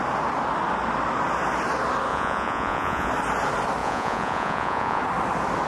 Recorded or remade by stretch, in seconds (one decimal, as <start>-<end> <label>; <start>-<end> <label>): 0.0-2.1 recorded; 2.1-3.1 remade; 3.1-3.8 recorded; 3.8-5.0 remade; 5.0-5.7 recorded